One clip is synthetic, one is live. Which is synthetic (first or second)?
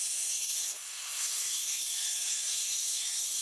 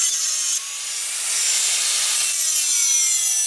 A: first